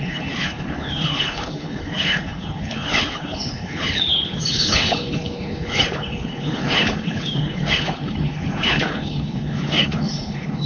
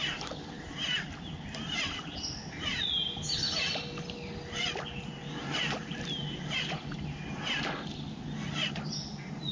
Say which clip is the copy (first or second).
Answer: first